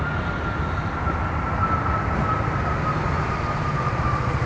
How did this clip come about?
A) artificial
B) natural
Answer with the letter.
B